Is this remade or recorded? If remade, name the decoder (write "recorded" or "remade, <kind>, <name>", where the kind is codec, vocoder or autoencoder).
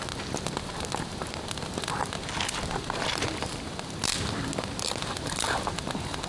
recorded